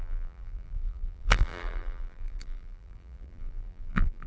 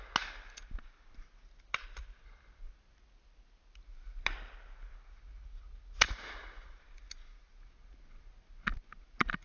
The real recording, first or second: second